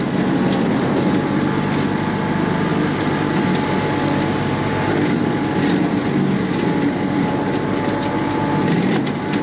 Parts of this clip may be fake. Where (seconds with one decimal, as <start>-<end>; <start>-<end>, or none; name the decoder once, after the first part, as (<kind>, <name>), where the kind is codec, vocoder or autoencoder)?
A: none